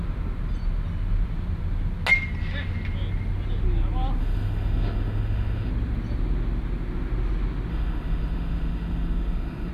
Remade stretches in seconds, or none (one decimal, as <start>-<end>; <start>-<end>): 4.2-5.7; 7.7-9.7